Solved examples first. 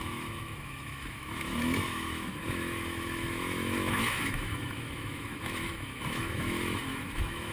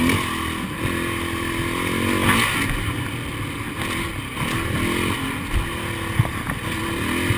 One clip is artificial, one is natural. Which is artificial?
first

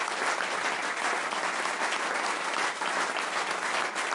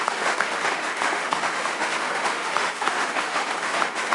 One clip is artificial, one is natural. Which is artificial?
second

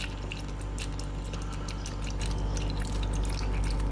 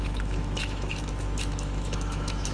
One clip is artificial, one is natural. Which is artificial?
second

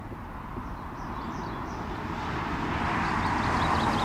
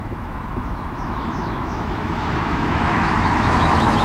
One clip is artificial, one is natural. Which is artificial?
second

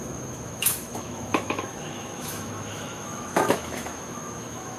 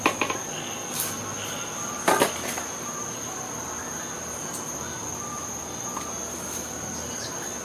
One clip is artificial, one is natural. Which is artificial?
first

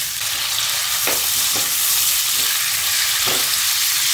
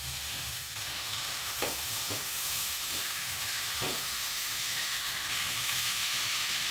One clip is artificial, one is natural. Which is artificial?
second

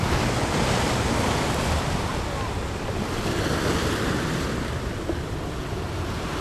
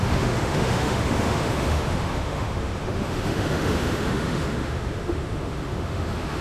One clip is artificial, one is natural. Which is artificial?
second